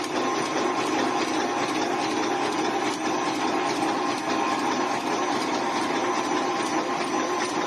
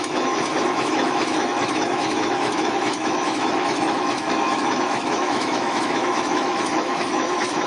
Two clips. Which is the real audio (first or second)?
first